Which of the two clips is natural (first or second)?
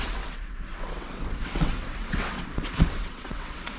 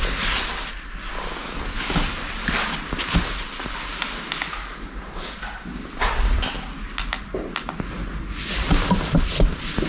second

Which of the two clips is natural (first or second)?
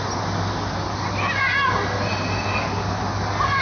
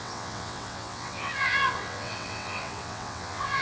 first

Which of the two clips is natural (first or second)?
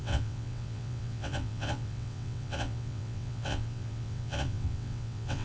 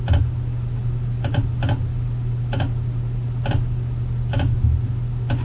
second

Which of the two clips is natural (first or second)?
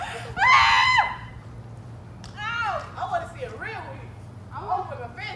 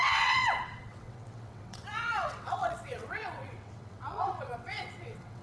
first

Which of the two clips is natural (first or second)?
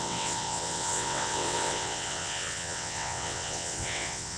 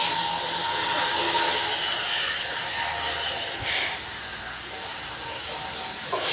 second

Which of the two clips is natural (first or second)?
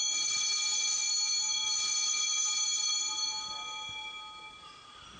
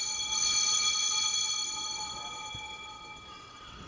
first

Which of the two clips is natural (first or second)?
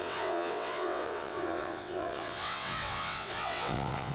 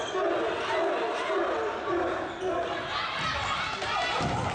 second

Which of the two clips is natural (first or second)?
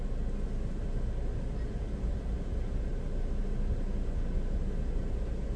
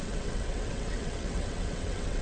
first